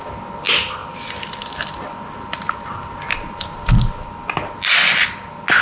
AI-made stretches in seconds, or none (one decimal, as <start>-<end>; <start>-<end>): none